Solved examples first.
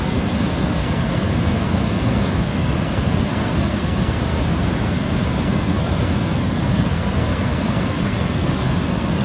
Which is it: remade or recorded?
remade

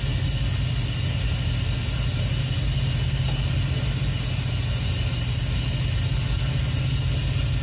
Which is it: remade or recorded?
recorded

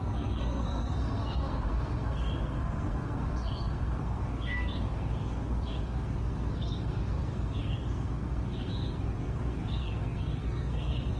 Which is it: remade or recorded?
remade